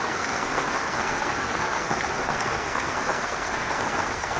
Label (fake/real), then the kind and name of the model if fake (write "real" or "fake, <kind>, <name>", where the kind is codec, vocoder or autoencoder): fake, codec, SNAC